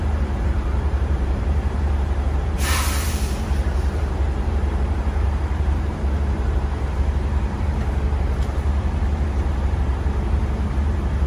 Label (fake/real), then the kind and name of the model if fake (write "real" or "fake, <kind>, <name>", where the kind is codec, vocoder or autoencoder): fake, vocoder, BigVGAN v2